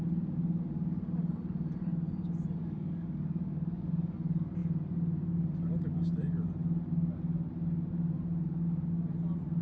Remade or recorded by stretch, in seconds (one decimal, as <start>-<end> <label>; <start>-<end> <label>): 0.0-2.6 recorded; 2.6-3.9 remade; 3.9-9.6 recorded